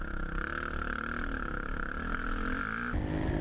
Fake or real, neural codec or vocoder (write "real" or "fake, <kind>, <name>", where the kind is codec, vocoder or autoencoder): real